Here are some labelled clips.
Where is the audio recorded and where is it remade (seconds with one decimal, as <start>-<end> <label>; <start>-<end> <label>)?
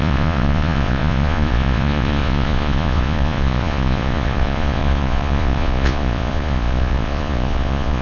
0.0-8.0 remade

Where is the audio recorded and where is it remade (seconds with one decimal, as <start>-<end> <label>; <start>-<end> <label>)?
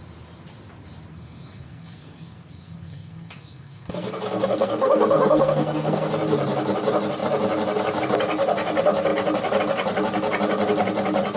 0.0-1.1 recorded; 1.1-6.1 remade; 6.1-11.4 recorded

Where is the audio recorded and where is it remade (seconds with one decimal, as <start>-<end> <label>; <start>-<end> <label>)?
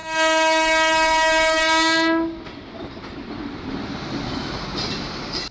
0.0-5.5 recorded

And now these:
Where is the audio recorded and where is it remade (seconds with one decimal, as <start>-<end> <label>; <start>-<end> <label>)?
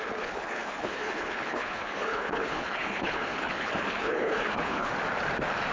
0.0-4.9 remade; 4.9-5.7 recorded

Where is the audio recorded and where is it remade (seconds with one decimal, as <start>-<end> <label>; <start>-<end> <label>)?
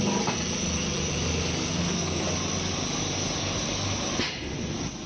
0.0-1.7 recorded; 1.7-2.2 remade; 2.2-5.1 recorded